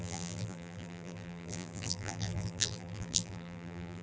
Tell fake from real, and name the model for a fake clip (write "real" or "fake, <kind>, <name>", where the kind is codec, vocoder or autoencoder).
fake, vocoder, BigVGAN v2